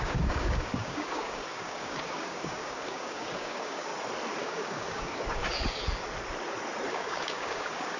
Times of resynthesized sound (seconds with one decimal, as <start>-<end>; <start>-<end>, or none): 0.0-3.9; 4.4-5.4; 6.9-8.0